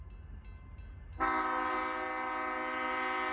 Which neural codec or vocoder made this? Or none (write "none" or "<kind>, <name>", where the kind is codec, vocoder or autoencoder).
none